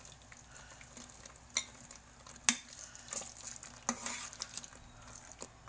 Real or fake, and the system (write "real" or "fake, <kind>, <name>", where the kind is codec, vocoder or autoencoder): real